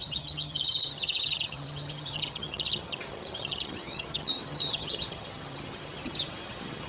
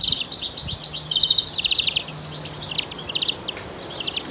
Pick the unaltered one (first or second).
second